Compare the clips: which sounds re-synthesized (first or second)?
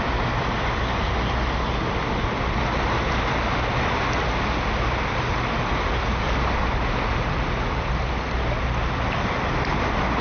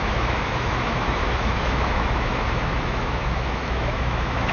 second